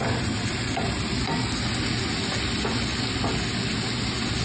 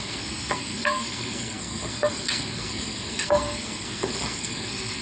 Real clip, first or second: first